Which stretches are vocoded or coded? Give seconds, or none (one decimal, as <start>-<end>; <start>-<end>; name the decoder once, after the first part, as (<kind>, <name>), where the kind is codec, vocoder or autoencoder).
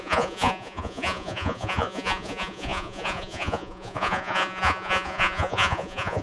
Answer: 0.0-6.2 (vocoder, Vocos)